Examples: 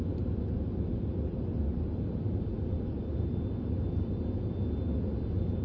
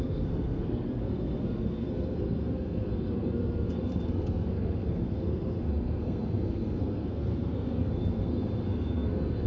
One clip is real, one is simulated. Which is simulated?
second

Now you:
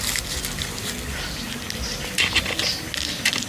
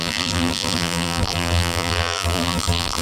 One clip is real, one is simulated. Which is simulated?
second